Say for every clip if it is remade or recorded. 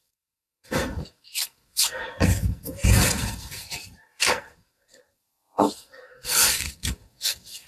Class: remade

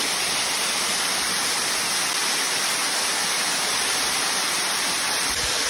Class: recorded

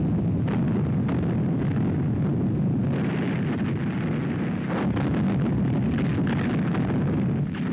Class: recorded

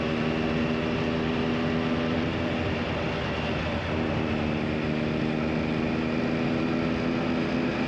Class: recorded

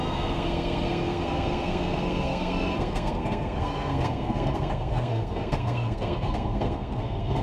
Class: remade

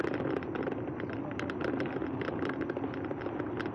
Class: recorded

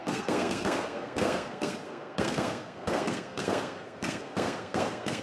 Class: remade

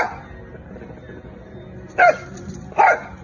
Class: recorded